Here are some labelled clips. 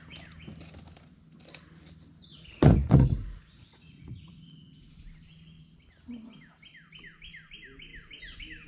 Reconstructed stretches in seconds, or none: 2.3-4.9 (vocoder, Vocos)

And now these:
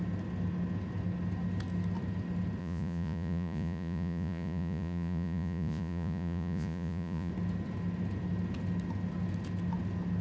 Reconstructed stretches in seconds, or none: 2.6-7.3 (vocoder, Vocos)

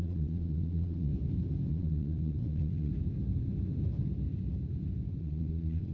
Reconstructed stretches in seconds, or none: 0.0-1.1 (vocoder, Vocos); 1.7-2.9; 5.2-5.9

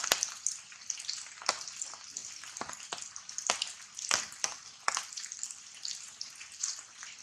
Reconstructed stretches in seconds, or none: none

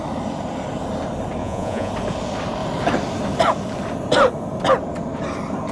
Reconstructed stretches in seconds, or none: 1.4-1.9 (vocoder, Vocos)

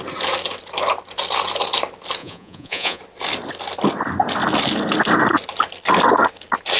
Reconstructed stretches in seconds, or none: 2.2-3.0 (vocoder, Vocos)

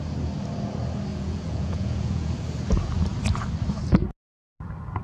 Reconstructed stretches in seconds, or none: 1.1-2.3 (vocoder, Vocos)